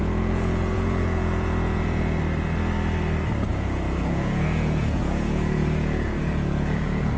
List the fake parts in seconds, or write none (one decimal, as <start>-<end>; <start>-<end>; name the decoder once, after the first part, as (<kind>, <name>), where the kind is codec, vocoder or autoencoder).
0.0-2.2 (vocoder, Vocos); 3.5-7.2

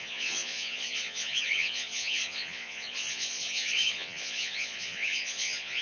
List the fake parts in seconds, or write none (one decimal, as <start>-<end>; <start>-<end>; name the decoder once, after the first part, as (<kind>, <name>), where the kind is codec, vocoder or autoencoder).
0.0-5.8 (vocoder, Vocos)

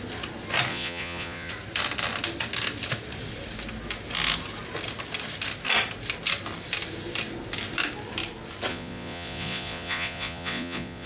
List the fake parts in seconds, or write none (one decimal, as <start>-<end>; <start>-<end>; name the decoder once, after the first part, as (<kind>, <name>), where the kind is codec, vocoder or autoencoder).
0.7-1.5 (vocoder, Vocos); 8.7-11.1